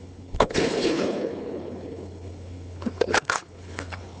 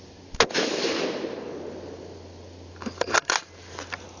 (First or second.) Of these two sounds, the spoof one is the first